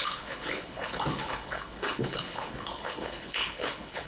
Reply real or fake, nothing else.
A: fake